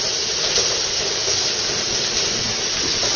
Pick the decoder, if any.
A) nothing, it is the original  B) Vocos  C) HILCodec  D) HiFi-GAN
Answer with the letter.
A